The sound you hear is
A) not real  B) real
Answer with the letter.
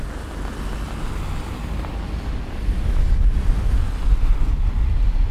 B